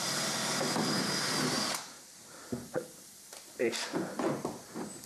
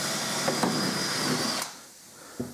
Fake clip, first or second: first